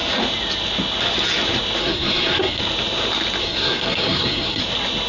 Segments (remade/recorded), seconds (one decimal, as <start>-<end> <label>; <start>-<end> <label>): 0.0-1.8 recorded; 1.8-2.6 remade; 2.6-3.4 recorded; 3.4-4.6 remade; 4.6-5.1 recorded